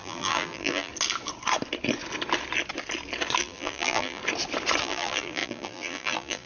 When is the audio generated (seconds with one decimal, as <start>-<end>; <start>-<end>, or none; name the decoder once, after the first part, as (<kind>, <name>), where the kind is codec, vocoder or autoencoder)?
0.0-0.9 (vocoder, BigVGAN v2); 3.4-4.2; 4.8-6.5